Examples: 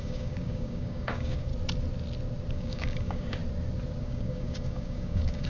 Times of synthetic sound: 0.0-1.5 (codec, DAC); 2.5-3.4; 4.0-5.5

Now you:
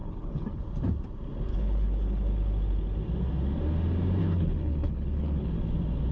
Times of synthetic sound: 0.0-0.6 (codec, HILCodec); 1.5-2.3; 4.2-5.6